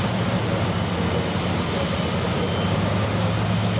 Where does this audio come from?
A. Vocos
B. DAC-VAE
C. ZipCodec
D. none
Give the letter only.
D